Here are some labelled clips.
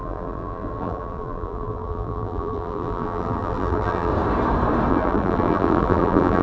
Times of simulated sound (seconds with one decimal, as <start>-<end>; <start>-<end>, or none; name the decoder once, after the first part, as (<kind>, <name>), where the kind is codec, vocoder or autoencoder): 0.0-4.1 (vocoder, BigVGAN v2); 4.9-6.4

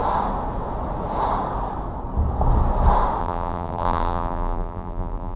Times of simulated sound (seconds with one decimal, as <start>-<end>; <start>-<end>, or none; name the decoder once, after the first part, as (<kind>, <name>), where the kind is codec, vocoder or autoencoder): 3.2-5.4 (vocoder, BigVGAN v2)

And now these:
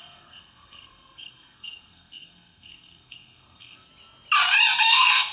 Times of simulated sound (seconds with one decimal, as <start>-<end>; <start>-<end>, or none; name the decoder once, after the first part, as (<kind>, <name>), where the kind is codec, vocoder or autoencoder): 0.0-3.9 (codec, SNAC); 4.8-5.3